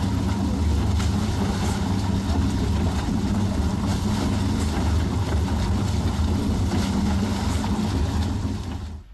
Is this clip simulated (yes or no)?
no